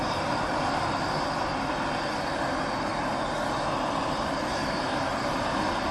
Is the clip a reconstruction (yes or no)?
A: no